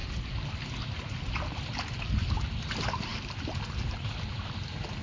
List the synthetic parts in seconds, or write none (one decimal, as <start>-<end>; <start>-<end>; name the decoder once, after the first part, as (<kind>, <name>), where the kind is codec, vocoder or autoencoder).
none